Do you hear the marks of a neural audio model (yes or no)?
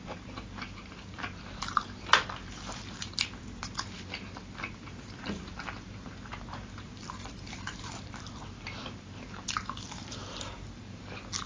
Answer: yes